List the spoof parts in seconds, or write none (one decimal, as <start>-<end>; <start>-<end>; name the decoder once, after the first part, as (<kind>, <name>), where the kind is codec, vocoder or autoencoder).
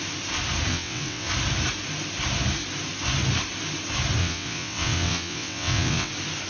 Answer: 0.7-1.3 (vocoder, WaveNeXt); 4.2-6.1